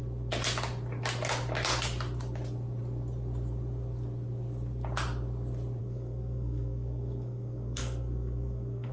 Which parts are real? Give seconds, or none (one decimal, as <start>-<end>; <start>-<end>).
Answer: 0.0-5.8